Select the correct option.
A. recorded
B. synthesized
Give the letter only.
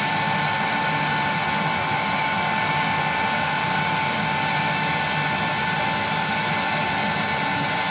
A